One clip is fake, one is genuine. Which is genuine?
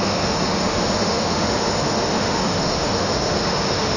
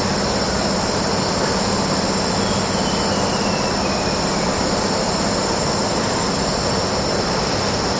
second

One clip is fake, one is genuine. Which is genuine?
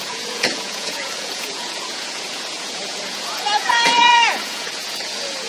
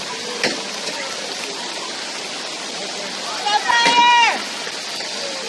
second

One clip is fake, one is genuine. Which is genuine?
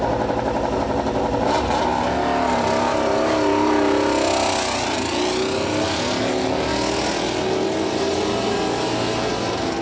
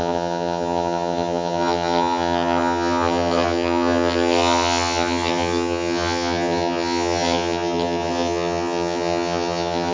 first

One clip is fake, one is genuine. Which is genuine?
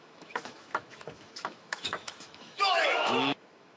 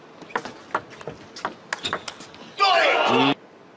second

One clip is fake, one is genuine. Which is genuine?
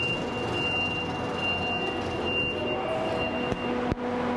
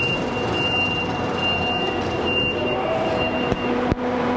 first